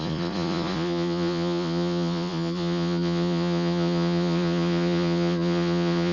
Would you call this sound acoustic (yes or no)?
no